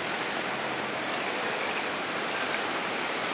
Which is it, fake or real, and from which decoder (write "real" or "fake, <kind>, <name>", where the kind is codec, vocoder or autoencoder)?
real